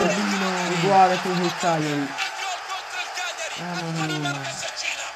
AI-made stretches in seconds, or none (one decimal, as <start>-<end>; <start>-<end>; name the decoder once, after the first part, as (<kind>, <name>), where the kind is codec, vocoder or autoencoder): 1.8-2.4 (codec, SNAC); 3.8-5.2